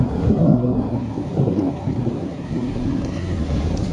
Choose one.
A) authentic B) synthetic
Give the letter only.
B